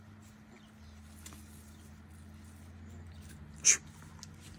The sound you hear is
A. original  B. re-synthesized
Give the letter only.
A